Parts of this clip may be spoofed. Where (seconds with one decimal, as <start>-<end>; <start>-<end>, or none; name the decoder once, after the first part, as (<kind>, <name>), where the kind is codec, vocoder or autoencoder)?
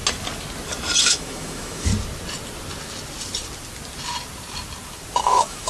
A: 1.0-1.9 (autoencoder, DAC-VAE); 5.2-5.7